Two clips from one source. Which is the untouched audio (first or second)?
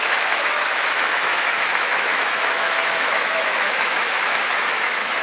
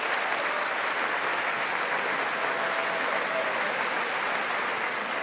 second